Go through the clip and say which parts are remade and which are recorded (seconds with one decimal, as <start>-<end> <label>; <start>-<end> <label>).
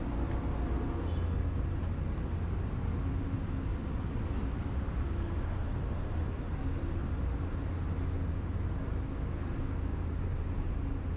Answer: 0.0-9.9 recorded; 9.9-10.5 remade; 10.5-11.2 recorded